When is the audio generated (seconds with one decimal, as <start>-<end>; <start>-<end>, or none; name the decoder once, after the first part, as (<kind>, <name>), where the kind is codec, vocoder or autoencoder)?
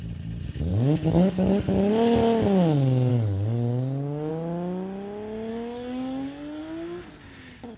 0.7-1.9 (codec, DAC); 3.1-4.3; 5.5-6.6